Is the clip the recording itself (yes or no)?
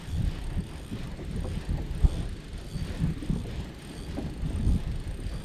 yes